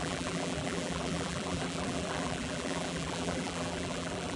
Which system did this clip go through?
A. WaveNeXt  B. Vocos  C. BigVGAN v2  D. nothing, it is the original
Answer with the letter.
C